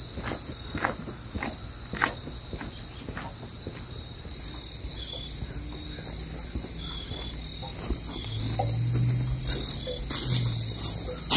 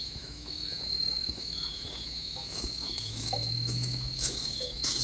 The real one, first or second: first